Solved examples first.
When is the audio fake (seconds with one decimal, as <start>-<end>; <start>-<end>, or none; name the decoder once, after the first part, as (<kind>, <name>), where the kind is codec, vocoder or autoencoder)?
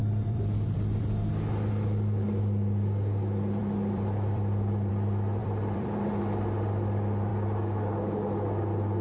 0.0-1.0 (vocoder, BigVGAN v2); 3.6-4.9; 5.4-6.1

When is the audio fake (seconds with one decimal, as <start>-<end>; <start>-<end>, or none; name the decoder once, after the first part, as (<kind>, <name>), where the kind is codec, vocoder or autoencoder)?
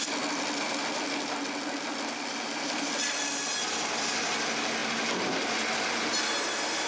none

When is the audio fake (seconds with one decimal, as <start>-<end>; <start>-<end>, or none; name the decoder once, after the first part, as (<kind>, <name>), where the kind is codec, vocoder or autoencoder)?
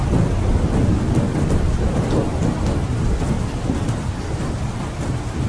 none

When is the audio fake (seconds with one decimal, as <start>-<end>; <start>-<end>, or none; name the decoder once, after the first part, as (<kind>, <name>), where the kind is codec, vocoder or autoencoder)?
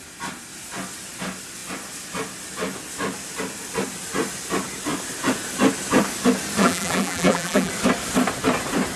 6.6-7.7 (vocoder, BigVGAN v2)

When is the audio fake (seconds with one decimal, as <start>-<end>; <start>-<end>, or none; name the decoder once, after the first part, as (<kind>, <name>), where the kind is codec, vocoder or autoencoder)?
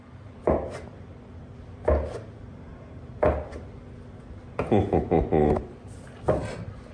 0.0-2.7 (vocoder, BigVGAN v2); 5.4-6.9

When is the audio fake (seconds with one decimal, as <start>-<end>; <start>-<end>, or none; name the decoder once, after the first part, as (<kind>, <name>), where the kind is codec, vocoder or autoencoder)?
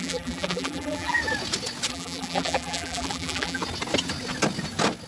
0.0-1.2 (vocoder, BigVGAN v2); 1.9-3.6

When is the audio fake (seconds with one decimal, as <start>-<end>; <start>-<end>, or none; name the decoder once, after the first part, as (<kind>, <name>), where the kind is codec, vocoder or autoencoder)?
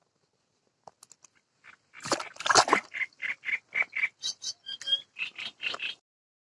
none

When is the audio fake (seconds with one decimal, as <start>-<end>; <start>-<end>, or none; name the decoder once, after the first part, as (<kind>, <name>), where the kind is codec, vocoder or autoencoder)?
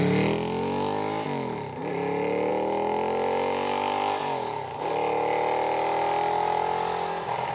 none